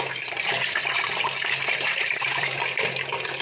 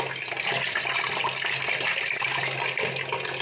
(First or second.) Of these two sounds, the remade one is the first